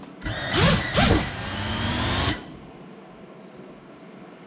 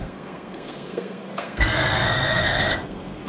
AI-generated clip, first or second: second